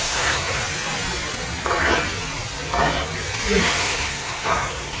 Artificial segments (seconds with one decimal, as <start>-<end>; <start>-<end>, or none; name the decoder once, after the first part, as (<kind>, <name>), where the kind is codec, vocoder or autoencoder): 0.0-0.6 (codec, SNAC); 3.6-5.0